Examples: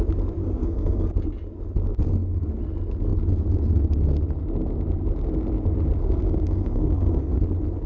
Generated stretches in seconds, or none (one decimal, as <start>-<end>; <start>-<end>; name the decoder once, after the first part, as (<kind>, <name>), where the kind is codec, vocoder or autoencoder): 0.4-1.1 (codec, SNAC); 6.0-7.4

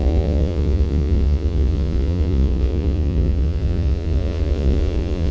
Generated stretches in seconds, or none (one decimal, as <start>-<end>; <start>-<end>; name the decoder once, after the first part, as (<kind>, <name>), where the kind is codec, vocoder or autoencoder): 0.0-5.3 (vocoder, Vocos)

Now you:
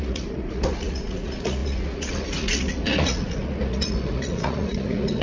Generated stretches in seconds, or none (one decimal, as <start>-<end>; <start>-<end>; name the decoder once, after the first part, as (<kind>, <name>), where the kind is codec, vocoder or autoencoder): 0.0-5.2 (vocoder, Vocos)

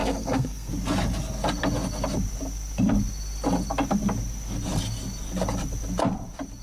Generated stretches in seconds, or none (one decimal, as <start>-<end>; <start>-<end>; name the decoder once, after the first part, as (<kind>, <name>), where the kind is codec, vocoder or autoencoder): 0.0-0.7 (codec, SNAC)

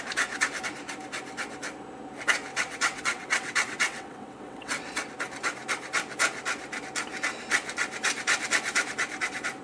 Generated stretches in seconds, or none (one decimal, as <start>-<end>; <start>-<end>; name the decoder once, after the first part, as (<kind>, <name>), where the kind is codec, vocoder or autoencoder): 2.5-5.0 (vocoder, WaveNeXt)

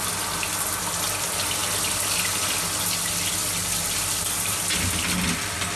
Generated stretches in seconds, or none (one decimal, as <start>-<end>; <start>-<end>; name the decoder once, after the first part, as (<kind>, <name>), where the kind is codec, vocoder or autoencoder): 3.4-4.6 (vocoder, BigVGAN v2)

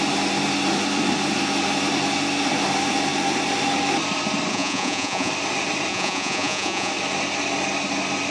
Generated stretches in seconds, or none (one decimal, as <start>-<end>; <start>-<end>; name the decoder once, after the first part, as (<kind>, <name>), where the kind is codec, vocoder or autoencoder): 4.5-5.3 (vocoder, Vocos); 5.9-6.9

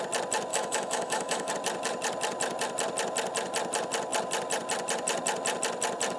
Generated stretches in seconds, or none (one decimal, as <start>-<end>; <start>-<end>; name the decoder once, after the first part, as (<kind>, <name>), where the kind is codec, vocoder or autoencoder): 0.5-1.5 (autoencoder, DAC-VAE)